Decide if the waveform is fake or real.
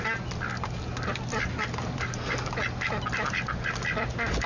real